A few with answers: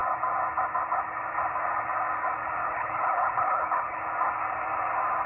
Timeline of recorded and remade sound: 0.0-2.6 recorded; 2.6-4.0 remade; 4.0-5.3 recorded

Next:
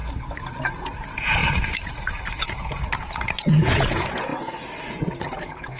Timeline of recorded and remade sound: 0.0-0.8 recorded; 0.8-4.3 remade; 4.3-4.9 recorded; 4.9-5.8 remade

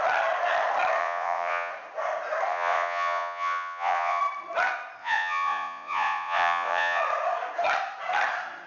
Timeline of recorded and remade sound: 0.0-1.0 recorded; 1.0-1.7 remade; 1.7-2.5 recorded; 2.5-4.2 remade; 4.2-5.0 recorded; 5.0-7.0 remade; 7.0-8.7 recorded

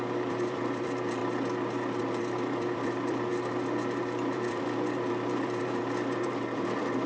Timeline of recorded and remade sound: 0.0-1.2 remade; 1.2-2.0 recorded; 2.0-3.3 remade; 3.3-4.0 recorded; 4.0-7.1 remade

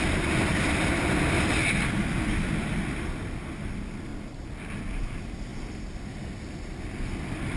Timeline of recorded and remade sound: 0.0-7.6 recorded

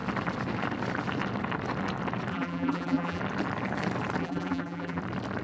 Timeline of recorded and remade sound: 0.0-2.3 recorded; 2.3-3.2 remade; 3.2-4.2 recorded; 4.2-5.0 remade; 5.0-5.4 recorded